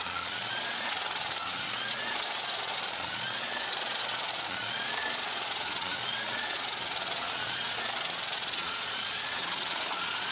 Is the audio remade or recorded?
remade